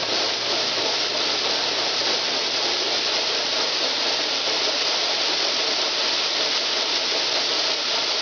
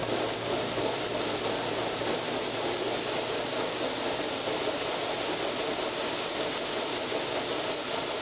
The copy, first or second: first